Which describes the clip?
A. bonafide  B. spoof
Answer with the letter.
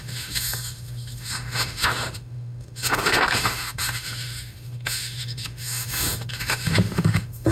B